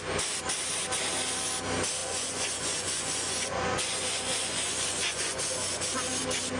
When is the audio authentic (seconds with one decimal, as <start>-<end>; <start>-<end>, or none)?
0.0-2.0; 6.0-6.6